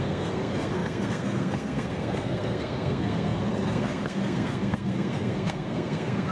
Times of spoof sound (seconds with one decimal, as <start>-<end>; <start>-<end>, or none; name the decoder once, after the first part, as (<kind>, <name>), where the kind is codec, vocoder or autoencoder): 0.0-6.3 (codec, SNAC)